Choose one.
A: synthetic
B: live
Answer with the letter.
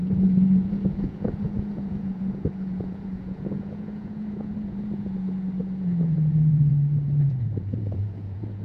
A